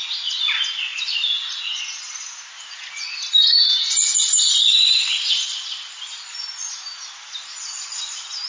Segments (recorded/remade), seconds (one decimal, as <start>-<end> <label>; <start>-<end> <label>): 0.0-8.5 recorded